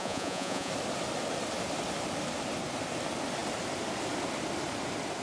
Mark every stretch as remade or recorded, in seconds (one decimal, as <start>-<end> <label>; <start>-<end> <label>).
0.0-0.7 remade; 0.7-5.2 recorded